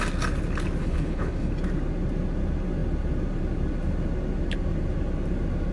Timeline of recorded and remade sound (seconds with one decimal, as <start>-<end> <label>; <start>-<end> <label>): 0.0-0.8 recorded; 0.8-1.5 remade; 1.5-5.7 recorded